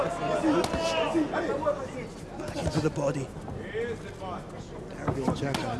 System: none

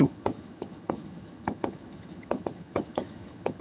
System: vocoder, HiFi-GAN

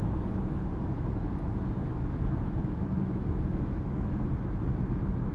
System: autoencoder, DAC-VAE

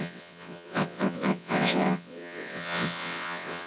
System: vocoder, WaveNeXt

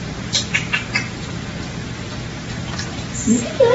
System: none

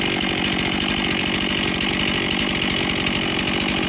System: none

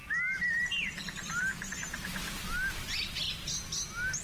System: none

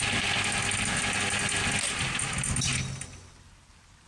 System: none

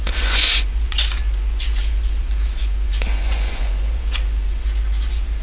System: vocoder, Vocos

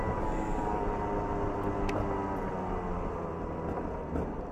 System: none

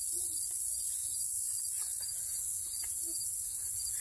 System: vocoder, Vocos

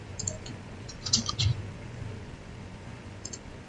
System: vocoder, Vocos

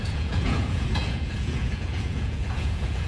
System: vocoder, Vocos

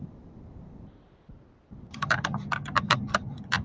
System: vocoder, BigVGAN v2